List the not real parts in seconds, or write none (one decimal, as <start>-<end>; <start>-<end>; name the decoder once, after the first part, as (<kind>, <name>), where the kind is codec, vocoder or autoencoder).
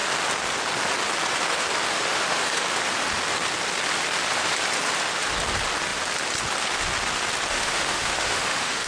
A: 1.9-2.6 (autoencoder, DAC-VAE); 7.5-8.9